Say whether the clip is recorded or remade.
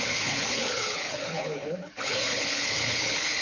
remade